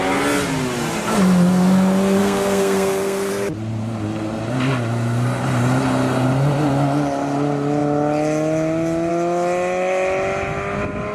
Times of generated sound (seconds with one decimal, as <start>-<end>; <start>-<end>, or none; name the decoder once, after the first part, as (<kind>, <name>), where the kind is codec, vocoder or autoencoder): 2.2-3.3 (codec, SNAC)